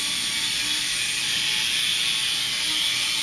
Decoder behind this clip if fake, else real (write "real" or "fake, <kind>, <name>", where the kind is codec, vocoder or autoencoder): real